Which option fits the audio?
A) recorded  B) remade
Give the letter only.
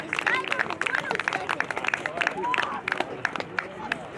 A